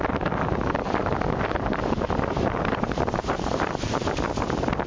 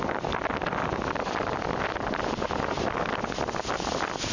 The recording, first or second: second